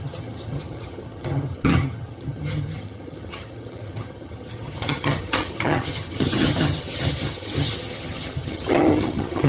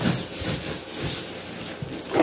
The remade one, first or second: first